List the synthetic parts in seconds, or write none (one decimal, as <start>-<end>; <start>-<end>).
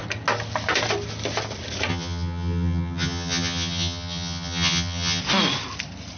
1.9-5.2